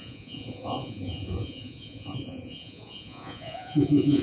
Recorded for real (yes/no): no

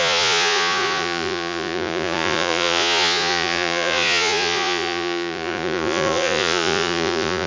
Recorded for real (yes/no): no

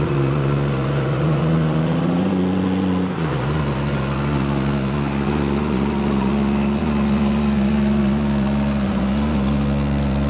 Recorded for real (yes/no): no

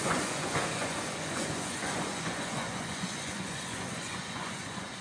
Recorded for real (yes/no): no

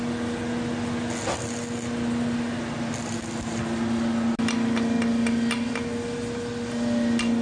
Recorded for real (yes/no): yes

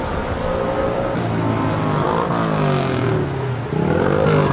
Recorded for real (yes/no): yes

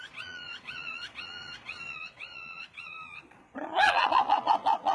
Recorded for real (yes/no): no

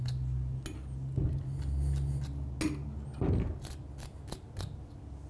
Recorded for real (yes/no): yes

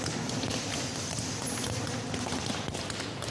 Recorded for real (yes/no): yes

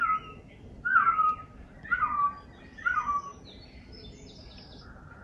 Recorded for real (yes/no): yes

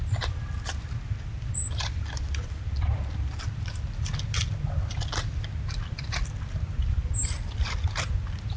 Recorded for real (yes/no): yes